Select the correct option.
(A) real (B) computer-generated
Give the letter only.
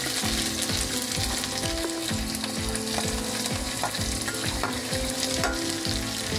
A